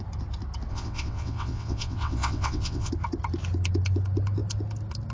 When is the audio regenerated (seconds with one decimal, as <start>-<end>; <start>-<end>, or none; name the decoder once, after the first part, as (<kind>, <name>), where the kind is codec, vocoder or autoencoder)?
0.7-2.9 (vocoder, WaveNeXt)